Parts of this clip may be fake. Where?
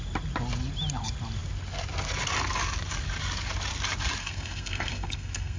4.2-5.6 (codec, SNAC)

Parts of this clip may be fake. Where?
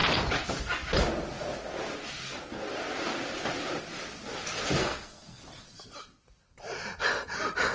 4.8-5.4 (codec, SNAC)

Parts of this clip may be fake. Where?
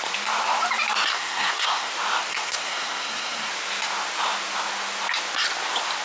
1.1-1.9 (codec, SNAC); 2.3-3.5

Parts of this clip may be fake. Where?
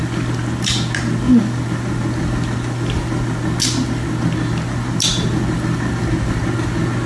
none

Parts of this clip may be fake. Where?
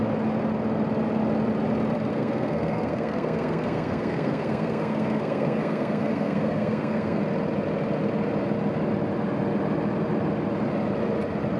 2.1-7.2 (codec, SNAC)